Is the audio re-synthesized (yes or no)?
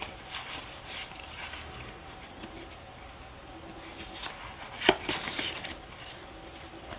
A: no